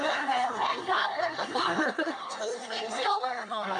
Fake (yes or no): yes